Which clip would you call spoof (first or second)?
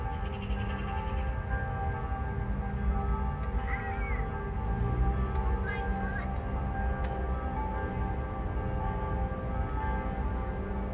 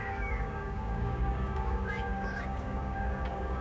second